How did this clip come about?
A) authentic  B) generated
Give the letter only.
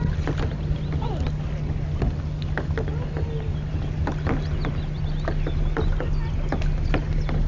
A